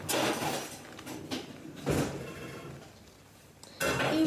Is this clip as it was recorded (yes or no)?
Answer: yes